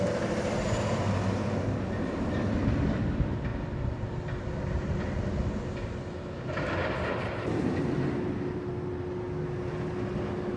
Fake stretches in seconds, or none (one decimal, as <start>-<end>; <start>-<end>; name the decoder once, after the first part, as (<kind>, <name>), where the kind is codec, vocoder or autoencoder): none